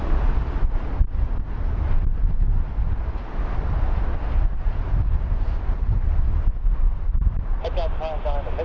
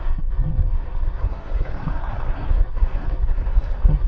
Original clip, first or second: first